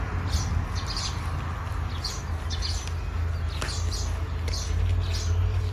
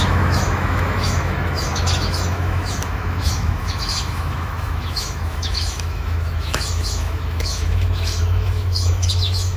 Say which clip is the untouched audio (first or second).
first